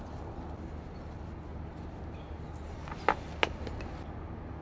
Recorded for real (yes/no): yes